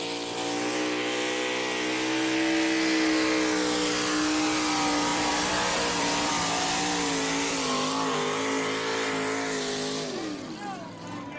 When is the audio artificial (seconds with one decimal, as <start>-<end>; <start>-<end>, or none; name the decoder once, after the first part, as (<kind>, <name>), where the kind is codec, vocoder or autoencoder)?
5.1-6.3 (vocoder, BigVGAN v2)